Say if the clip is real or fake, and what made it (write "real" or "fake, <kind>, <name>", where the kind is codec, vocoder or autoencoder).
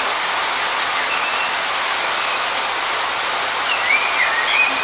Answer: real